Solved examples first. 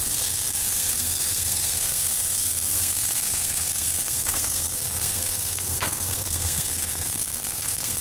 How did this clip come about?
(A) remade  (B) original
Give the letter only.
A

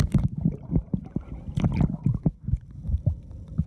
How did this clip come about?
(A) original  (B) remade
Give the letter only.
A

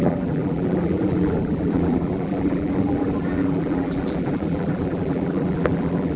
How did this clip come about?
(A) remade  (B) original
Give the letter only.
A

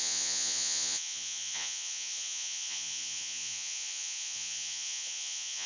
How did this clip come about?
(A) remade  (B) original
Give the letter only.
A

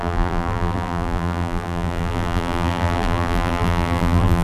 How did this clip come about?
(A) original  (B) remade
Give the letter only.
B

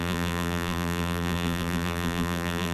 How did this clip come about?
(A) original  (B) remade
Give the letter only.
B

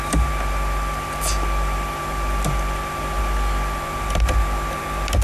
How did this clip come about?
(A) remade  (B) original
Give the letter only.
B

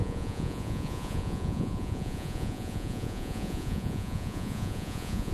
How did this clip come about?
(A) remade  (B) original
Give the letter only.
A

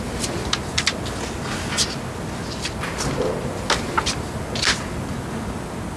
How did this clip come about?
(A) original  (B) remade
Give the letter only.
A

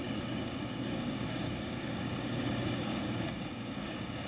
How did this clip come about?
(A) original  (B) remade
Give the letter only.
B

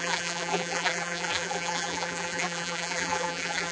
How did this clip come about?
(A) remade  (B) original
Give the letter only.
A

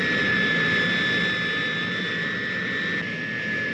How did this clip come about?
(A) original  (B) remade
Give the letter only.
A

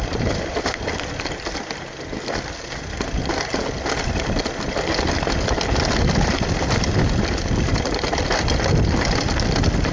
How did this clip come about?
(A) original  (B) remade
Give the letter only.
A